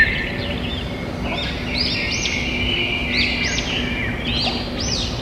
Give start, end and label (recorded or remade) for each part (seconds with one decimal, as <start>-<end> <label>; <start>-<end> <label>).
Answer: 0.0-5.2 recorded